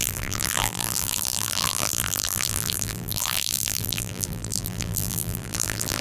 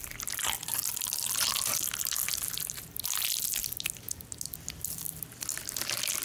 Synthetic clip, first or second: first